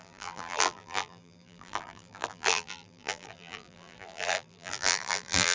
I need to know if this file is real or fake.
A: fake